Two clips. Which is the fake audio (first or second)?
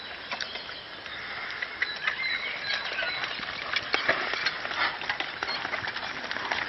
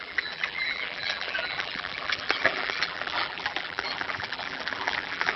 second